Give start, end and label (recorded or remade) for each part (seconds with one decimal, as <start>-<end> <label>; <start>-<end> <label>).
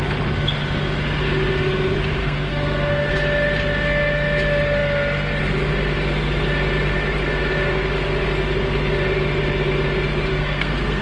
0.0-2.2 recorded; 2.2-3.1 remade; 3.1-10.3 recorded; 10.3-11.0 remade